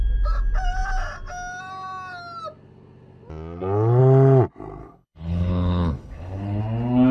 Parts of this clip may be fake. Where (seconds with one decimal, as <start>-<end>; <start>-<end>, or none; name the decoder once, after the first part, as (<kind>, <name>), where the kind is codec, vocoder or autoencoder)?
4.8-6.6 (codec, HILCodec)